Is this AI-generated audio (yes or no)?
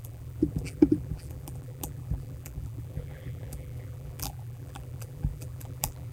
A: yes